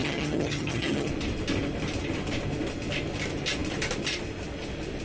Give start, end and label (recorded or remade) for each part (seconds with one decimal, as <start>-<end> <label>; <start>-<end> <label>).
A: 0.0-1.1 remade; 1.1-5.0 recorded